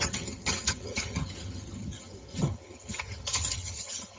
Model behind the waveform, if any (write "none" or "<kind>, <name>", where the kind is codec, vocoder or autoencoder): vocoder, HiFi-GAN